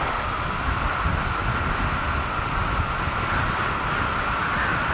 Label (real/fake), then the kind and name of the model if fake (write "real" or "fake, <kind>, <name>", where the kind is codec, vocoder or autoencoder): real